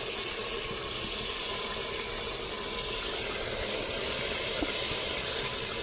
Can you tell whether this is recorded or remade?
recorded